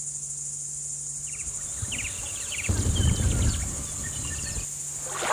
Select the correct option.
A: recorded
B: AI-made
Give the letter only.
A